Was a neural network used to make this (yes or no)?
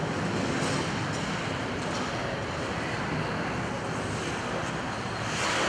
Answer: no